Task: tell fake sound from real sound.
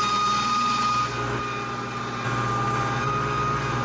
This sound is real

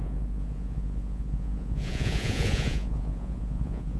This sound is fake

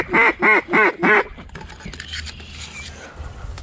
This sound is real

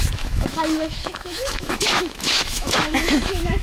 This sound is fake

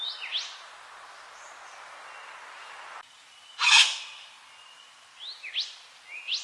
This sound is real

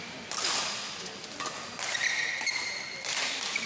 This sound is real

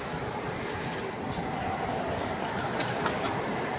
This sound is real